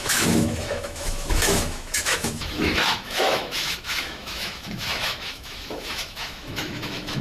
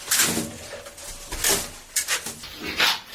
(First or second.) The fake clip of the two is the first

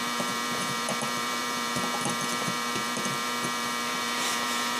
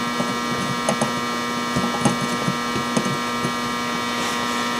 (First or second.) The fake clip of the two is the first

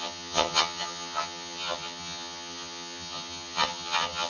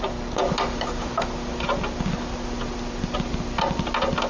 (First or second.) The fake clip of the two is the first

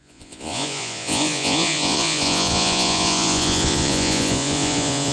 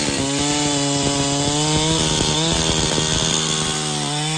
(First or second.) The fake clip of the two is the first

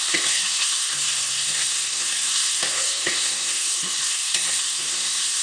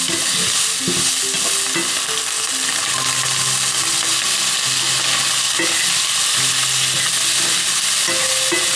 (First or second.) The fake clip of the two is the first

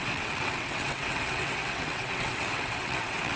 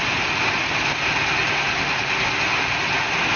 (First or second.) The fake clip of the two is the first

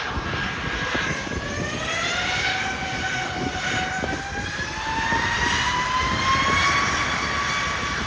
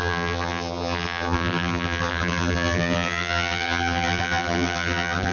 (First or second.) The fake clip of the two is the second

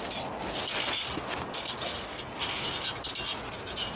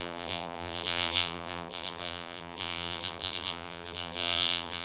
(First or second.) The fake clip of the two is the second